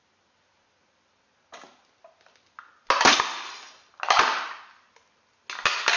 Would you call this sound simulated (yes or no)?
no